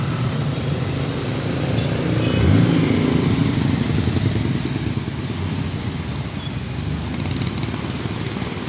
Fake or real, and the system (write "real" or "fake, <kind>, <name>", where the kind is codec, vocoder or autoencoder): real